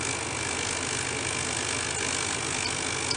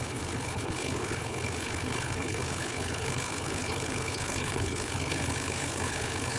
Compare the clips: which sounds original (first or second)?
first